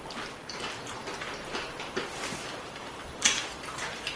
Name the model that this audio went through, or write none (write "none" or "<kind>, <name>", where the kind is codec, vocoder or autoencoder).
vocoder, BigVGAN v2